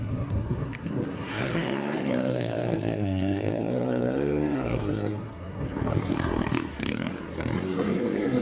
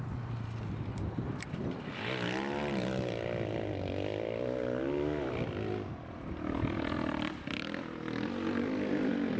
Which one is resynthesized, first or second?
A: first